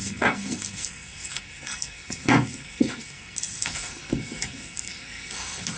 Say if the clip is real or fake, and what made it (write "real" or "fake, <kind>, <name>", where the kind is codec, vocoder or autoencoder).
fake, codec, SNAC